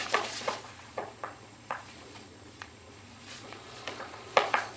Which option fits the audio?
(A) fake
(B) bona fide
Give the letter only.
A